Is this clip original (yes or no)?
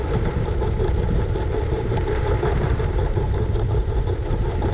no